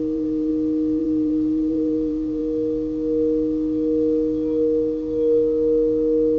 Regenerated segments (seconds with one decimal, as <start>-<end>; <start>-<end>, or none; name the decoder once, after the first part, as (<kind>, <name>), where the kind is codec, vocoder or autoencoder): 0.0-0.5 (vocoder, BigVGAN v2); 1.0-2.4